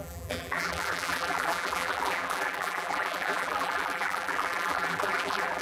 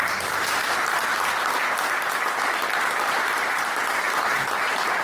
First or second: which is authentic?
second